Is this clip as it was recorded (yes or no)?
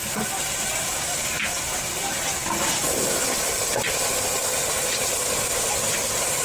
yes